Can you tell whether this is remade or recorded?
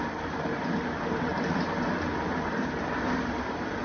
remade